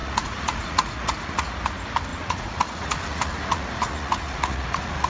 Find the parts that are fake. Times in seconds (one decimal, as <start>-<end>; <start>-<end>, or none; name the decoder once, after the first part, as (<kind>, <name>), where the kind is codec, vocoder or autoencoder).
0.0-1.5 (vocoder, Vocos); 2.1-5.1